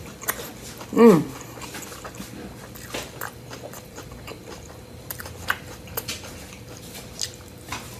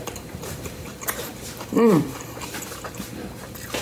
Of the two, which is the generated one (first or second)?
second